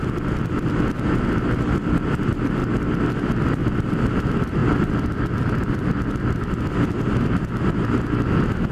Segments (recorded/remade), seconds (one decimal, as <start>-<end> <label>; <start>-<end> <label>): 0.0-8.7 recorded